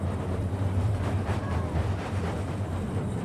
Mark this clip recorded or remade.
remade